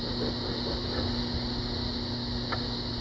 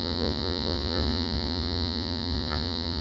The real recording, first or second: first